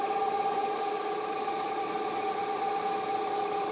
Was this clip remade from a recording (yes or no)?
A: yes